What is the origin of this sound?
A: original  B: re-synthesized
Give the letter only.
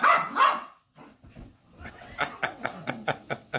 B